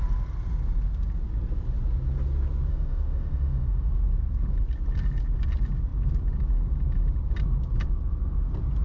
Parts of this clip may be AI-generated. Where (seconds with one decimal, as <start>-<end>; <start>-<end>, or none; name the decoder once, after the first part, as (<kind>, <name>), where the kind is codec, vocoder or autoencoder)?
2.7-3.9 (autoencoder, DAC-VAE)